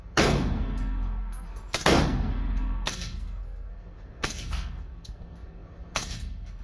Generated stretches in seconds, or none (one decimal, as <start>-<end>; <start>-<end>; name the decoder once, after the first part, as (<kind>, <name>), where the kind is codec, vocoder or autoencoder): 0.0-6.6 (codec, SNAC)